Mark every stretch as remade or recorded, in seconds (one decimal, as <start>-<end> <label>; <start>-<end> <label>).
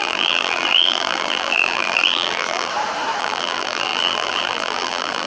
0.0-2.7 remade; 2.7-3.2 recorded; 3.2-5.3 remade